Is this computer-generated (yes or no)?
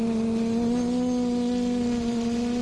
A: no